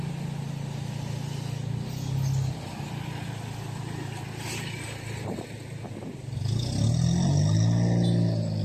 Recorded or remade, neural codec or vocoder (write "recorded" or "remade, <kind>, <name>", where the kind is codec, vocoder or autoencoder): recorded